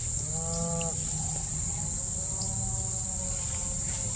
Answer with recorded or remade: recorded